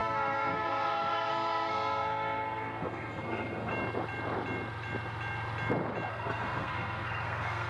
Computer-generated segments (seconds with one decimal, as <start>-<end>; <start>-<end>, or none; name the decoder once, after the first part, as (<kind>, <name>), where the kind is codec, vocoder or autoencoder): 0.0-3.7 (codec, SNAC); 6.1-7.7

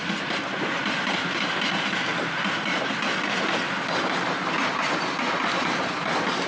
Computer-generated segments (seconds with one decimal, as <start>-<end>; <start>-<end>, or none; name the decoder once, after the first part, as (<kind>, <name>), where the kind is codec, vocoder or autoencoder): none